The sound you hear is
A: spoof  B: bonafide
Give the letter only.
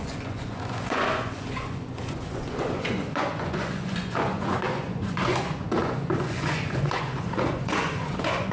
A